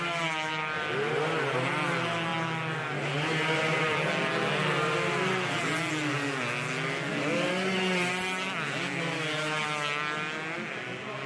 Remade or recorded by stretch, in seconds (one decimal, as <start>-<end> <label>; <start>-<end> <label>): 0.0-11.3 recorded